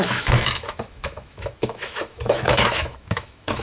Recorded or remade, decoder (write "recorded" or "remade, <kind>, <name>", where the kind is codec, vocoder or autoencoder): remade, autoencoder, DAC-VAE